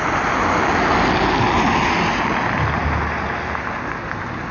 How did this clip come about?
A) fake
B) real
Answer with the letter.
B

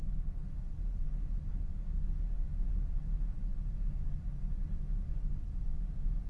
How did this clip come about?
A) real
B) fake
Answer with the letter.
A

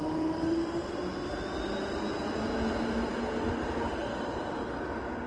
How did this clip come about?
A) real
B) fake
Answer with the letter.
A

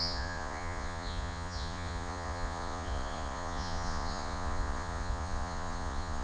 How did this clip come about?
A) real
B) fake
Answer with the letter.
B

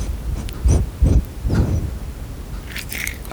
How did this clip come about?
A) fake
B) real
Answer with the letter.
A